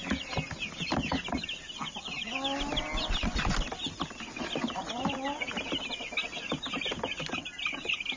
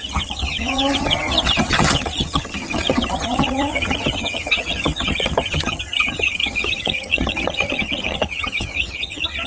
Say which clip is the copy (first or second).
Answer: second